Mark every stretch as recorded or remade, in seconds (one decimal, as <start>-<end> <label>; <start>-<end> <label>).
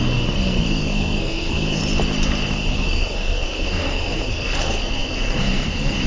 0.0-1.8 remade; 1.8-2.7 recorded; 2.7-6.1 remade